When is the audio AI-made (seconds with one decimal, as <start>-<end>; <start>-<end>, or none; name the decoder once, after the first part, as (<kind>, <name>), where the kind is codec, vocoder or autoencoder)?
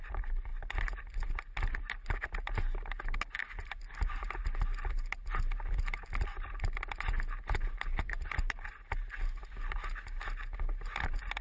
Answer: 0.5-1.0 (vocoder, BigVGAN v2); 7.9-8.4